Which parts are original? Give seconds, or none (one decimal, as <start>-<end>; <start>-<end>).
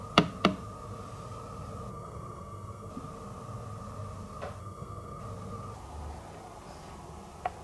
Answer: 0.0-1.9; 2.9-4.6; 5.2-7.6